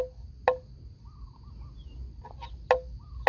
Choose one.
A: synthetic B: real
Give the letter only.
B